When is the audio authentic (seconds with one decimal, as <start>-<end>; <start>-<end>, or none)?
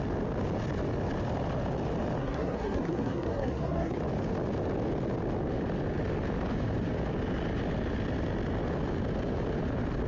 0.0-2.2; 4.0-10.1